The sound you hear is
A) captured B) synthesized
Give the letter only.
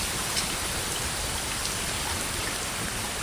B